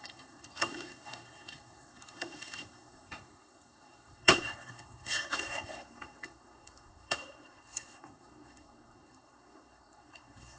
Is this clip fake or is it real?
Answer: fake